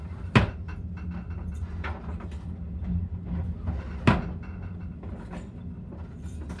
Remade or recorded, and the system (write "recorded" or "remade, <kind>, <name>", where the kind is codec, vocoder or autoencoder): recorded